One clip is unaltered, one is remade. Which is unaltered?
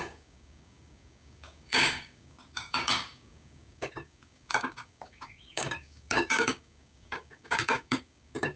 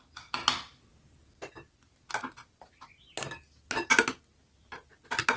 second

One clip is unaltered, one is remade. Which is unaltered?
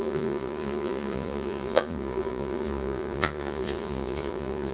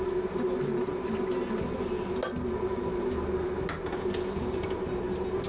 second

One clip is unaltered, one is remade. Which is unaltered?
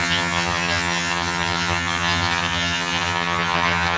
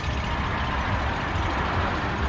second